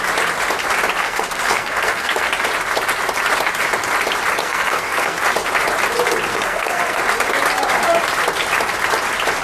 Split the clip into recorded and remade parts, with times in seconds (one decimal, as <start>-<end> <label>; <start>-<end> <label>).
0.0-1.0 recorded; 1.0-2.3 remade; 2.3-4.4 recorded; 4.4-5.2 remade; 5.2-6.3 recorded; 6.3-7.0 remade; 7.0-9.4 recorded